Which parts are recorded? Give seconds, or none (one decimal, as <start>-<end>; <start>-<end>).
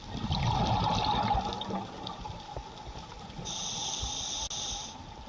0.0-5.3